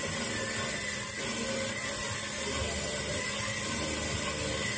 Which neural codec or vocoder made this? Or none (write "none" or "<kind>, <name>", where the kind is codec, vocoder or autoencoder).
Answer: none